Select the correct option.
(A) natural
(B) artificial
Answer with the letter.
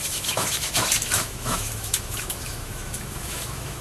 B